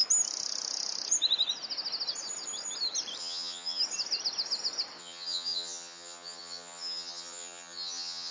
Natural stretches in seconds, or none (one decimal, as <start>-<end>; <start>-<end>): 0.0-3.2; 3.8-5.0